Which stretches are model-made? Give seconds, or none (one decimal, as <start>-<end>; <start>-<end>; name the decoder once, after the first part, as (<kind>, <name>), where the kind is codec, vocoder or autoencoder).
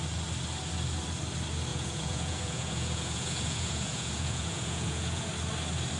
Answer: 1.7-5.3 (vocoder, Vocos)